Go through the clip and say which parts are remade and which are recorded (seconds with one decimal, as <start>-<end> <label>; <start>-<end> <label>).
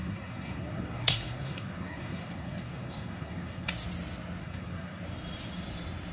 0.0-3.7 remade; 3.7-4.4 recorded; 4.4-5.0 remade; 5.0-6.1 recorded